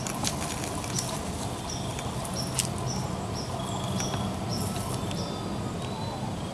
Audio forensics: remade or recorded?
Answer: recorded